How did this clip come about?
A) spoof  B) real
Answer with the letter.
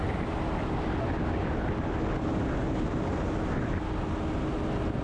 B